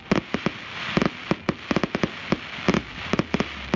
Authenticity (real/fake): real